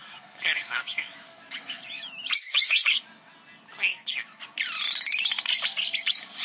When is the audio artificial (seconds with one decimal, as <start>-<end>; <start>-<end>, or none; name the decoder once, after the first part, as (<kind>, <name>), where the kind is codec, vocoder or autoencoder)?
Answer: 0.0-3.0 (autoencoder, DAC-VAE); 3.9-4.4